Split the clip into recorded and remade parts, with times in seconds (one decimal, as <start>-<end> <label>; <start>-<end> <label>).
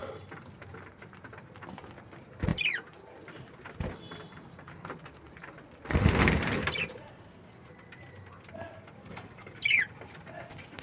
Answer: 0.0-9.0 recorded; 9.0-9.6 remade; 9.6-10.8 recorded